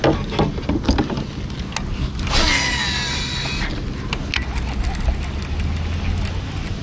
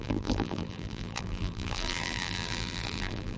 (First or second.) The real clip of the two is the first